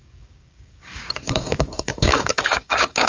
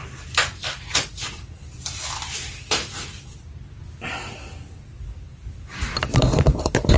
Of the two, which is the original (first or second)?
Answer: second